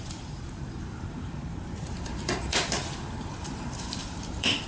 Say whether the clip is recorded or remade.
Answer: remade